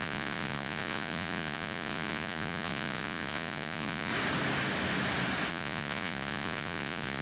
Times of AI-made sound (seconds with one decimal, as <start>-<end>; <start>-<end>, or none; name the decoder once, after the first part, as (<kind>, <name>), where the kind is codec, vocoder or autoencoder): 0.0-4.1 (vocoder, Vocos); 5.5-7.2